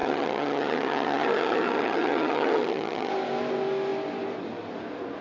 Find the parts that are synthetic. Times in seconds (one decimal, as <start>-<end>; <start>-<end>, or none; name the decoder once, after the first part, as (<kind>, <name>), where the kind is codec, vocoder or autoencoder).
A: 0.0-3.1 (vocoder, HiFi-GAN)